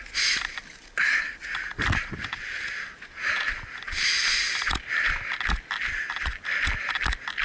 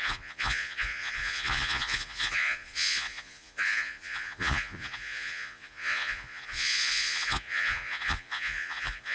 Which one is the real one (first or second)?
first